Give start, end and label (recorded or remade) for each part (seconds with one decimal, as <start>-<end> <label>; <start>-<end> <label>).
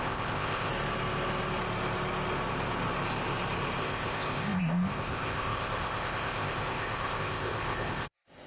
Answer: 0.0-0.7 remade; 0.7-3.8 recorded; 3.8-8.5 remade